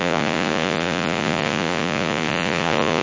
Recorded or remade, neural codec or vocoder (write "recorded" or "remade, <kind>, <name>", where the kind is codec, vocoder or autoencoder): remade, vocoder, Vocos